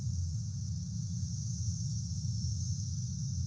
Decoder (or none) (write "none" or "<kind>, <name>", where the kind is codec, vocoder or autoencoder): none